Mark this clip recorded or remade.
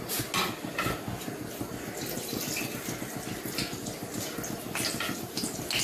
recorded